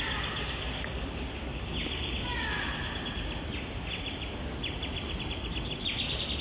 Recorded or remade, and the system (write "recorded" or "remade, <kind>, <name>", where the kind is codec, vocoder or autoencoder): recorded